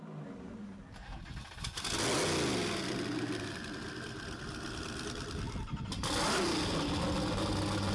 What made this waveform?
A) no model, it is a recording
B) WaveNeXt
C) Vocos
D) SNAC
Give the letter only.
A